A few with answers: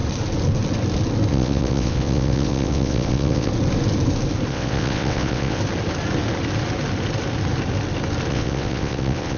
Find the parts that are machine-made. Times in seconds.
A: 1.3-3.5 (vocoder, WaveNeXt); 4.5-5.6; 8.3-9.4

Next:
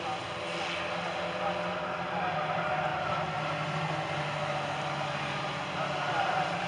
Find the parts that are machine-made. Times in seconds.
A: none